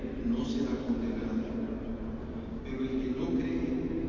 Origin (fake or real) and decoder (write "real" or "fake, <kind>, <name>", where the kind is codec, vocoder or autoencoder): real